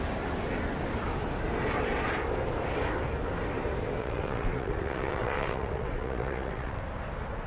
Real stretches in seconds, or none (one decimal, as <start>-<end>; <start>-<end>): 0.0-4.0; 6.8-7.5